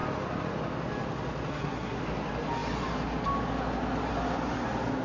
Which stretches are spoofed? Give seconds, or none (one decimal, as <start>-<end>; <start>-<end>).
1.5-2.0